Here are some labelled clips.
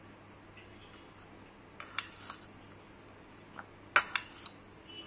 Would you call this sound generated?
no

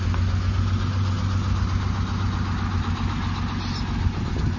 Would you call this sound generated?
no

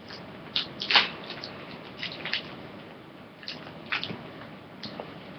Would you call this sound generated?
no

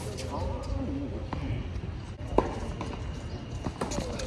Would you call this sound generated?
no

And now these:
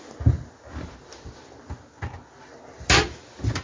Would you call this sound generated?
no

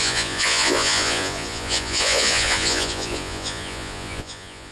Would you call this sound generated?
yes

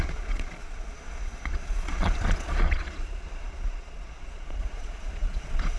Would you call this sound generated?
yes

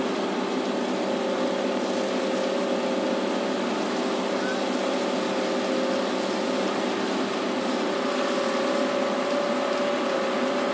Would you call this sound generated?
no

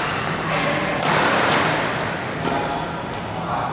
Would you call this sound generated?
no